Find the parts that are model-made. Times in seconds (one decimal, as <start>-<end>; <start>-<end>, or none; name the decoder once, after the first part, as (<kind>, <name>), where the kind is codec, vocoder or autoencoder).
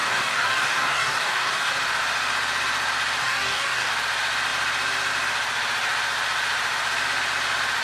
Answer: 0.0-1.7 (codec, DAC); 3.2-3.9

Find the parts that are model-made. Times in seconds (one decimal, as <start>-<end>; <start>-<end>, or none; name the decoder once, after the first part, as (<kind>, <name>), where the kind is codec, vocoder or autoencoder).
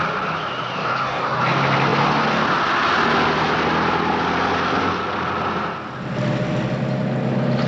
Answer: 0.8-1.4 (codec, DAC)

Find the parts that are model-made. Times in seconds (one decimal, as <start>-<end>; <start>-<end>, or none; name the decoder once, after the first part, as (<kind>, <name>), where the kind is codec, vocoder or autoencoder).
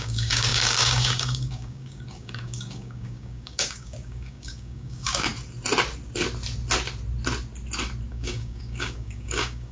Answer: 0.0-5.3 (codec, DAC); 8.1-9.7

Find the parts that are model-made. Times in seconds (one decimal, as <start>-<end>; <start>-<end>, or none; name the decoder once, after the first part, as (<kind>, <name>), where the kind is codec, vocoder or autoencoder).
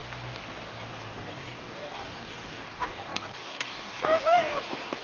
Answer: 0.9-5.0 (codec, DAC)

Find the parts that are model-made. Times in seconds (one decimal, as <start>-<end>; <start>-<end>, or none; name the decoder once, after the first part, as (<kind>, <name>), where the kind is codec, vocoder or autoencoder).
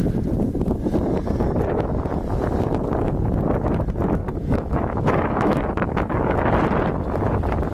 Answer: 4.2-6.5 (codec, DAC)